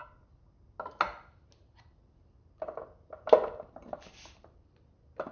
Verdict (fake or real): real